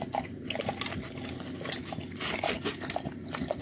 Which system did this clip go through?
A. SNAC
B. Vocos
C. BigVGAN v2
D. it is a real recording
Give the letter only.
D